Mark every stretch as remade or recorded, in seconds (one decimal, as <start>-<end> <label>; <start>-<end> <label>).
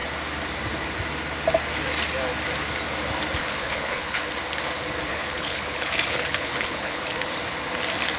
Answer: 0.0-3.4 recorded; 3.4-4.3 remade; 4.3-5.1 recorded; 5.1-7.3 remade; 7.3-8.2 recorded